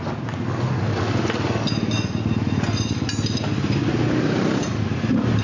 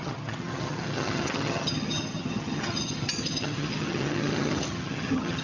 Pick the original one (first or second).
first